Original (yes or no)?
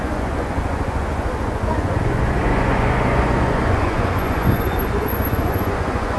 no